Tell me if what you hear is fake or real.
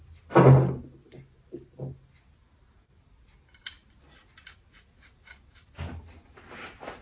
real